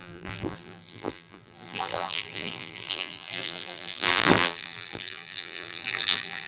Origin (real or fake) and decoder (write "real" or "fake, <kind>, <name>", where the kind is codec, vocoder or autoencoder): fake, vocoder, BigVGAN v2